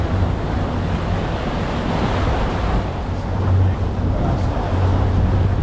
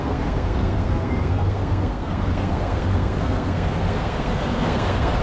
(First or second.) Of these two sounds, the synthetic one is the second